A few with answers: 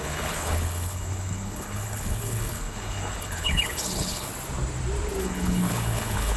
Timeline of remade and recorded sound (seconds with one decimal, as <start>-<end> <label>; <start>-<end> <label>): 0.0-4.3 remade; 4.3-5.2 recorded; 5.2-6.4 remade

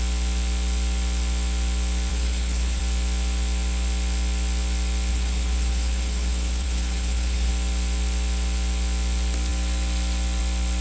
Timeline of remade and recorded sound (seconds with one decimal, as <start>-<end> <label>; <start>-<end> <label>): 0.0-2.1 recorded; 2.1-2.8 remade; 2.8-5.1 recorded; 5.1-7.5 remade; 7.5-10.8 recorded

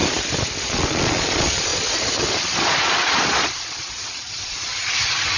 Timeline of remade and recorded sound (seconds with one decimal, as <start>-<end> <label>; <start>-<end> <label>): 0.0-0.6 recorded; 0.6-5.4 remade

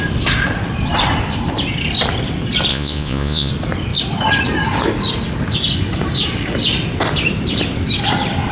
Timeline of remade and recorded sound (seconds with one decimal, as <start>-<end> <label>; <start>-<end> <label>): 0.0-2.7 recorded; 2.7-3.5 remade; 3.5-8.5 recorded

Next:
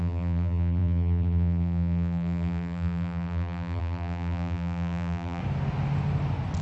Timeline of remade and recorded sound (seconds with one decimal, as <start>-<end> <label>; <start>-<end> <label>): 0.0-5.4 remade; 5.4-6.6 recorded